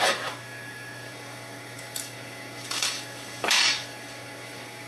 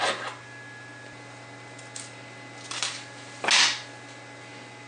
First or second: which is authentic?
second